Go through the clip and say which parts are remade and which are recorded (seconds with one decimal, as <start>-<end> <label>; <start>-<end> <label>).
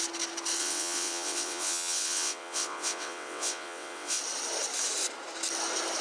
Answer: 0.0-0.6 recorded; 0.6-4.2 remade; 4.2-6.0 recorded